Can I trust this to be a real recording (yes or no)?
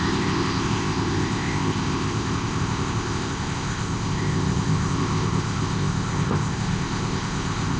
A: no